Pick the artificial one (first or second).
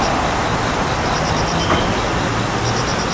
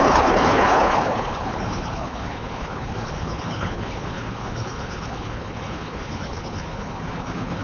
second